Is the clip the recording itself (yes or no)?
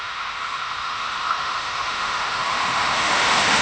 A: no